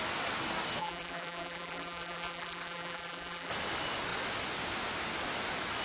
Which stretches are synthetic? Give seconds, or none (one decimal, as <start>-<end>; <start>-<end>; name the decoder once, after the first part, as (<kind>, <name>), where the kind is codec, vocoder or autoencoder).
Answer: 0.8-3.5 (vocoder, BigVGAN v2)